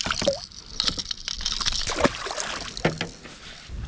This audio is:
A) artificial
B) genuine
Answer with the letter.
B